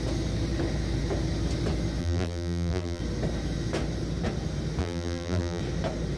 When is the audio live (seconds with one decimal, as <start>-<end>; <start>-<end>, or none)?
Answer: 0.0-2.0; 3.0-4.8; 5.6-6.2